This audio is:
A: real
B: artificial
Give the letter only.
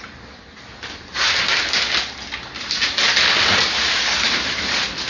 A